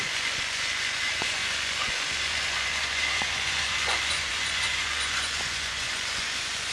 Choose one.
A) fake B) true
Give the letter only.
A